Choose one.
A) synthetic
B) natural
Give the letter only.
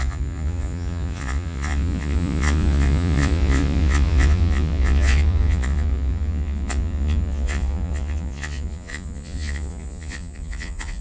A